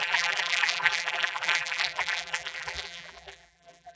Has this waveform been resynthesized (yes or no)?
yes